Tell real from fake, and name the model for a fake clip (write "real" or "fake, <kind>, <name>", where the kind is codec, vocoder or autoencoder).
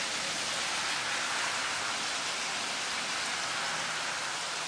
real